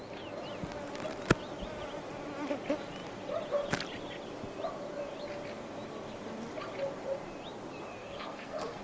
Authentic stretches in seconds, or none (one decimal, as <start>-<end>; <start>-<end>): 0.0-8.0